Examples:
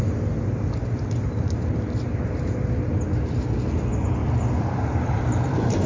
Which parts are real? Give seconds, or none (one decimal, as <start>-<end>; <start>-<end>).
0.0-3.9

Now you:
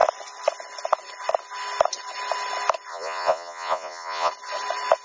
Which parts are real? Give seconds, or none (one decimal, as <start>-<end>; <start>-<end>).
0.0-2.9; 4.3-5.0

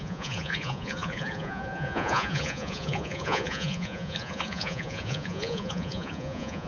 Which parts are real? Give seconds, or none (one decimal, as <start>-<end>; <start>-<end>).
none

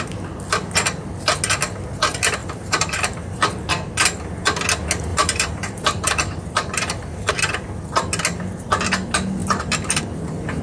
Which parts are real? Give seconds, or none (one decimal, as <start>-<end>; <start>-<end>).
0.0-2.4; 3.6-5.1; 7.3-10.6